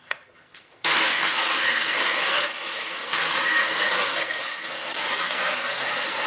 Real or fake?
fake